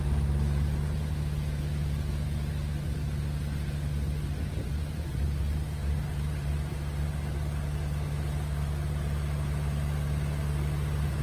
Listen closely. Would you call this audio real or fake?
real